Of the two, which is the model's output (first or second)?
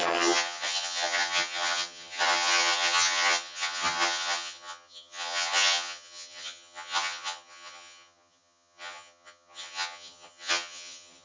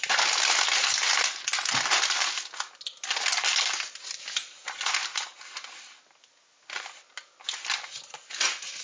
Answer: first